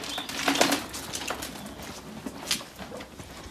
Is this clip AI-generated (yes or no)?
no